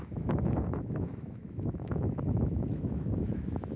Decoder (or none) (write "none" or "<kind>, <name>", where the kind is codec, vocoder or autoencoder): autoencoder, DAC-VAE